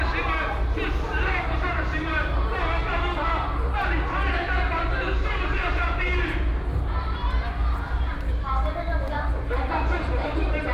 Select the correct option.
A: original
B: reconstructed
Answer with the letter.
B